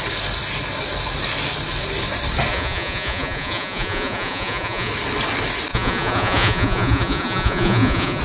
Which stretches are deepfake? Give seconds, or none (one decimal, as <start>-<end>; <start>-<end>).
2.5-4.9; 5.7-8.2